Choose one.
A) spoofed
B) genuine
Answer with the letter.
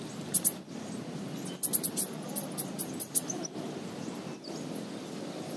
B